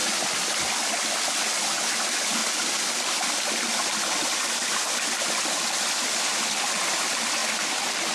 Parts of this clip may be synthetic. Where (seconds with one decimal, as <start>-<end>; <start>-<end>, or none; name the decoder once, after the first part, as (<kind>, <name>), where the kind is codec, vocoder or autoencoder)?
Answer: 0.0-1.4 (vocoder, BigVGAN v2); 7.4-8.1